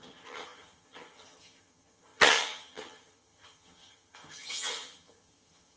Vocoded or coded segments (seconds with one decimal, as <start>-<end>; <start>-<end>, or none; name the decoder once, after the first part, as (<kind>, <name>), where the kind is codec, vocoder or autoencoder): 0.0-5.8 (vocoder, HiFi-GAN)